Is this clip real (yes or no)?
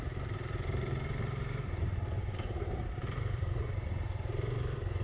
no